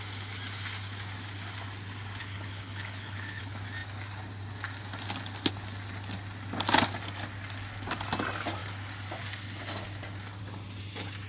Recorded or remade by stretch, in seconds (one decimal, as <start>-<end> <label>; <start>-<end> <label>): 0.0-2.2 recorded; 2.2-3.4 remade; 3.4-11.3 recorded